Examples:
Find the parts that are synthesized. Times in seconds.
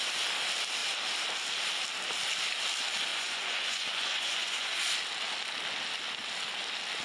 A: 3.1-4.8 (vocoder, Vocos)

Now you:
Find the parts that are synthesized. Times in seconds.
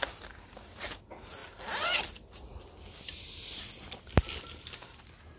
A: none